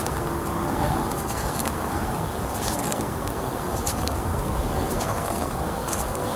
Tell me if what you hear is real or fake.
fake